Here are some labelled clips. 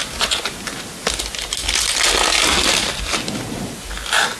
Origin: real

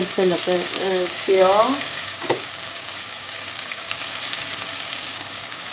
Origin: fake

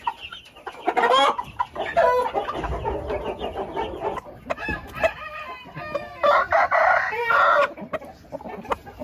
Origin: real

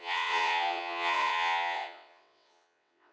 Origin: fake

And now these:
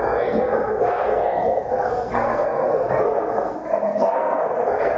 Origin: fake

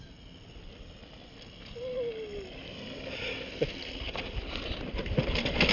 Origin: real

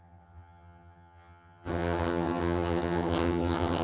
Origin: fake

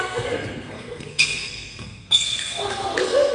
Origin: fake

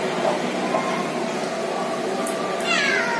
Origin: real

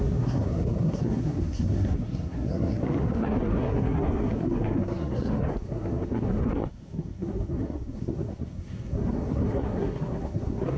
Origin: fake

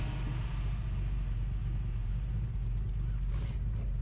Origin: real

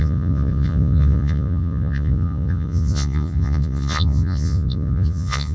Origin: fake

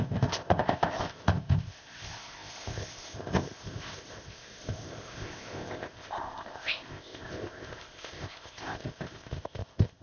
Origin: fake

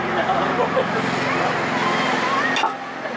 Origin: real